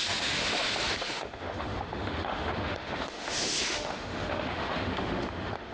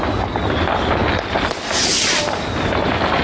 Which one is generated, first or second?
first